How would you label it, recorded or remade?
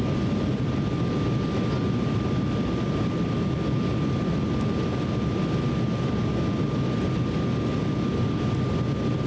recorded